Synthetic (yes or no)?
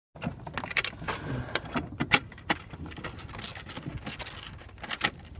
no